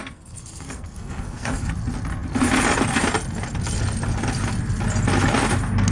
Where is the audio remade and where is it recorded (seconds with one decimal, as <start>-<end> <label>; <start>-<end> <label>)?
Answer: 0.0-1.7 remade; 1.7-5.9 recorded

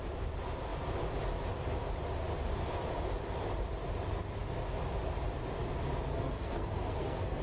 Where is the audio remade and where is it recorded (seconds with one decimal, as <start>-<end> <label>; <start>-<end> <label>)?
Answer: 0.0-6.1 recorded; 6.1-7.4 remade

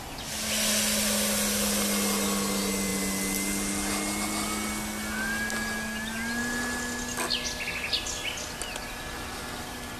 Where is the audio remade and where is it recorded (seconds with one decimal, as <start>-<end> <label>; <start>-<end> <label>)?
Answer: 0.0-10.0 recorded

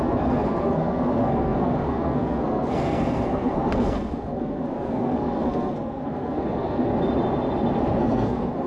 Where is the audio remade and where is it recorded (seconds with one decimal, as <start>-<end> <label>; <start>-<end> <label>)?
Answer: 0.0-6.9 remade; 6.9-8.0 recorded; 8.0-8.7 remade

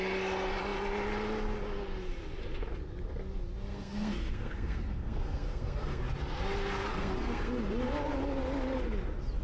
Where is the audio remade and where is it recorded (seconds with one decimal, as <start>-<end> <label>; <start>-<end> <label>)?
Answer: 0.0-3.7 recorded; 3.7-6.0 remade; 6.0-6.9 recorded; 6.9-7.5 remade; 7.5-9.4 recorded

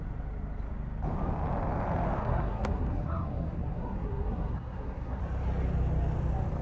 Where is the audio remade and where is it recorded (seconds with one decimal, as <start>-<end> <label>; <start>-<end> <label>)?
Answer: 0.0-2.2 recorded; 2.2-5.2 remade; 5.2-6.6 recorded